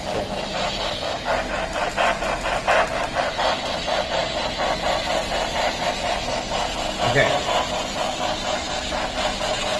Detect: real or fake real